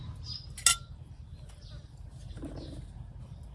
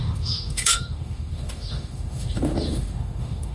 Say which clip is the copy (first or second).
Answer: second